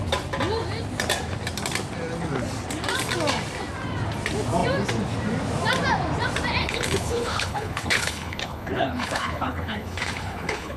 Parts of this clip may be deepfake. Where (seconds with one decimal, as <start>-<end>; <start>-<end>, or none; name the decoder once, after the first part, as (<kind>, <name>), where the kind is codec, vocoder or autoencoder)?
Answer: 6.6-10.8 (codec, HILCodec)